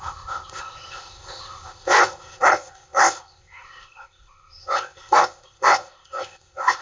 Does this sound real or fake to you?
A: fake